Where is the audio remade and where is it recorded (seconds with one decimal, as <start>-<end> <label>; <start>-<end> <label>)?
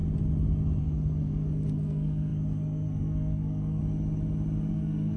0.0-0.8 recorded; 0.8-3.8 remade; 3.8-4.7 recorded; 4.7-5.2 remade